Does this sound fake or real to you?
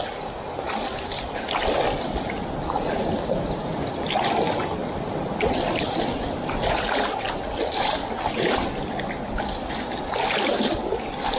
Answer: real